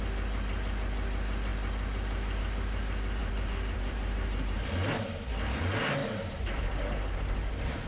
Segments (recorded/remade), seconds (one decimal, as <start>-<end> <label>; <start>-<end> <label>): 0.0-3.2 recorded; 3.2-4.7 remade; 4.7-6.0 recorded; 6.0-6.6 remade; 6.6-7.9 recorded